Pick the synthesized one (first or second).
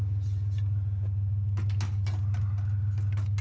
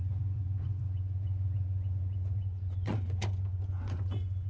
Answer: second